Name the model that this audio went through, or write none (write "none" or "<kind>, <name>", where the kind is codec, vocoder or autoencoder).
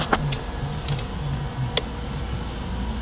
none